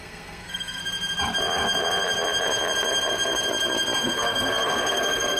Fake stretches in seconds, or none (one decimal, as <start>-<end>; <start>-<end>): 0.0-0.8; 4.0-5.4